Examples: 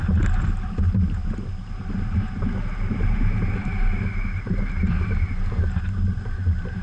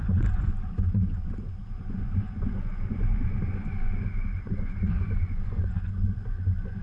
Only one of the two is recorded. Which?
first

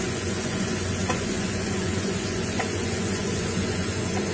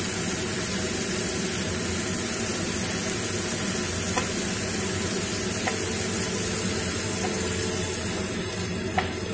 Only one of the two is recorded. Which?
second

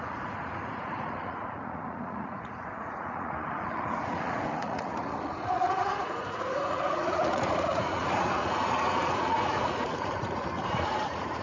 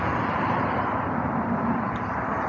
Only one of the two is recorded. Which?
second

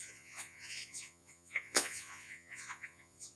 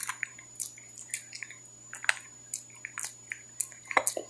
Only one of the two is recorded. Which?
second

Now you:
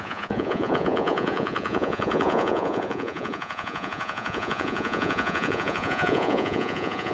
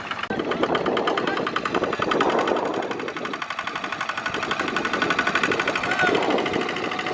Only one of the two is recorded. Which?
second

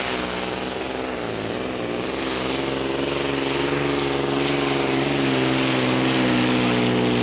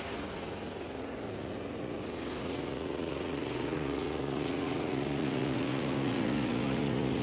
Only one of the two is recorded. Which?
first